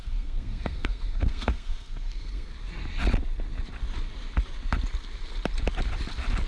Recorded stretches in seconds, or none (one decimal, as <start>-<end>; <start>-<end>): 2.5-6.5